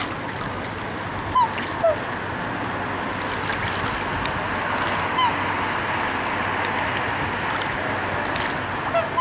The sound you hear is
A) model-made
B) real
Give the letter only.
B